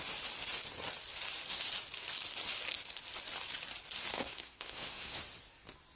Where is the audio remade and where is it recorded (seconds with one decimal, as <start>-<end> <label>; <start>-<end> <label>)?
0.0-4.1 recorded; 4.1-5.2 remade; 5.2-5.9 recorded